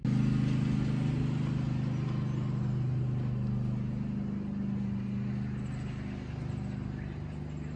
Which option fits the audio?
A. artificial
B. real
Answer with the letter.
B